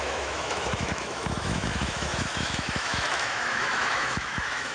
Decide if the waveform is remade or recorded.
remade